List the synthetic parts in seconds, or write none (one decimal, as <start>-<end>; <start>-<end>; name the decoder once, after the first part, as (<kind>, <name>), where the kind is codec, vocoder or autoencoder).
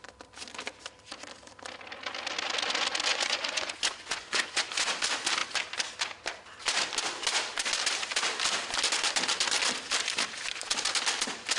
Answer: 3.1-4.9 (vocoder, Vocos)